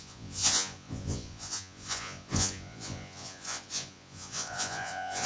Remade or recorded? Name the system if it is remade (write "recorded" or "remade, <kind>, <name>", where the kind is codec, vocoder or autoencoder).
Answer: remade, vocoder, Vocos